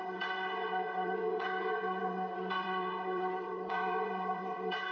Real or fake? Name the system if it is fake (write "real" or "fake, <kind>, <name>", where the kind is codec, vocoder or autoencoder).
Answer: fake, vocoder, WaveNeXt